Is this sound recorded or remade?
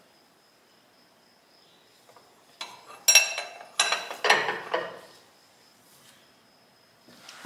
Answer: recorded